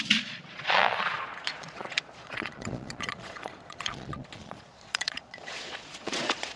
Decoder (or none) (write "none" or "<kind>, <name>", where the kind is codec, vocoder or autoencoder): vocoder, Vocos